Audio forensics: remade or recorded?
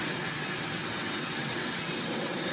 remade